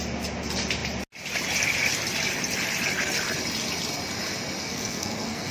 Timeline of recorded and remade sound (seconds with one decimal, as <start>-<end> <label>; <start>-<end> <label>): 0.0-4.6 recorded; 4.6-5.5 remade